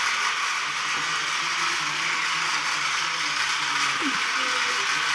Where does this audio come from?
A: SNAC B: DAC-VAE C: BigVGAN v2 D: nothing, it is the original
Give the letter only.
D